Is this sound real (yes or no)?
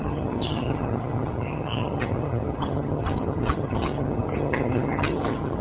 no